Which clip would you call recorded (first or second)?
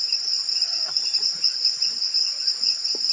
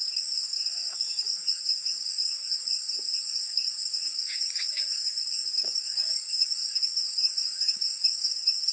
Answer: first